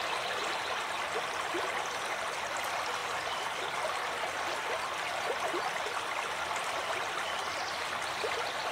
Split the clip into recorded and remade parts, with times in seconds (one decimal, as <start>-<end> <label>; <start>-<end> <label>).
0.0-3.0 recorded; 3.0-3.6 remade; 3.6-8.7 recorded